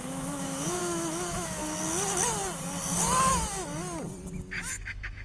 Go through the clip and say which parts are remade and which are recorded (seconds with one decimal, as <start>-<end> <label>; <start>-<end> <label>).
0.0-1.6 remade; 1.6-4.7 recorded; 4.7-5.2 remade